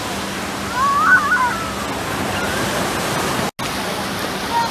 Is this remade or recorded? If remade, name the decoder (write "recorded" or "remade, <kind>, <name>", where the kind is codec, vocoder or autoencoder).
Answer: recorded